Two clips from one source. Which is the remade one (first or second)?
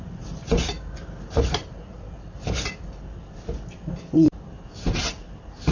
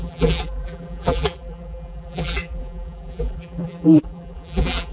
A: second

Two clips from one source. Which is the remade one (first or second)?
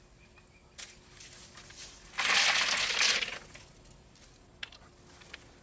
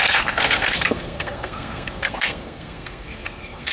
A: second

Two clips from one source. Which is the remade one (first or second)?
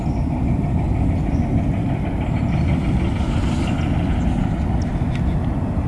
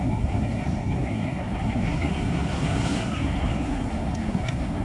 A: second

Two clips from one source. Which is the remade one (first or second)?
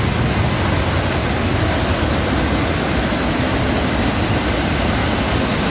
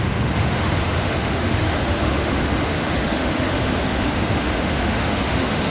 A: second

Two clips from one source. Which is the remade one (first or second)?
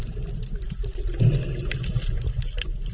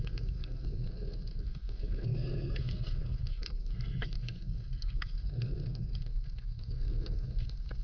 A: second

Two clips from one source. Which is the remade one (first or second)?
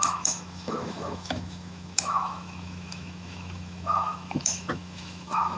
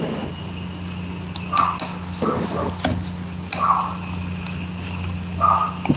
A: first